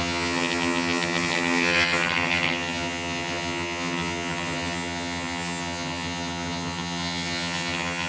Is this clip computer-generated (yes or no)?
yes